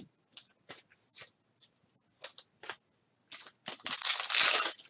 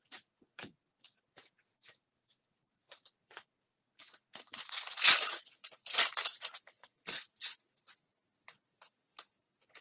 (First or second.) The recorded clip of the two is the first